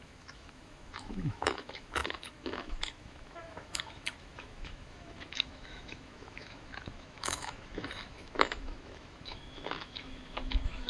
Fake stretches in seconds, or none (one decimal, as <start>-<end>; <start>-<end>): 0.0-10.9